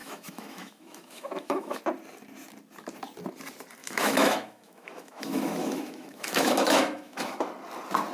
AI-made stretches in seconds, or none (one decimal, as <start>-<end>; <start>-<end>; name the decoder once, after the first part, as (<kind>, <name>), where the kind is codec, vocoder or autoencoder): 0.0-1.8 (autoencoder, DAC-VAE); 3.8-7.4